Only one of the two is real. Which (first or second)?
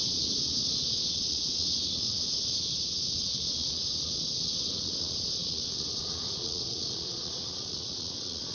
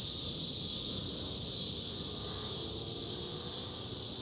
second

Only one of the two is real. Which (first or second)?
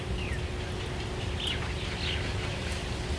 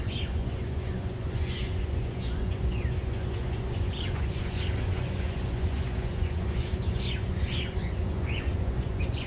first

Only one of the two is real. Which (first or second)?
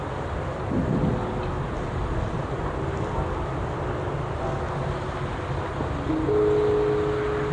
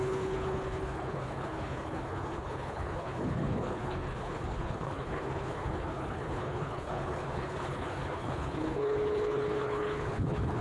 first